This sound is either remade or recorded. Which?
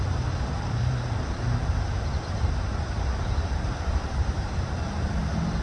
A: remade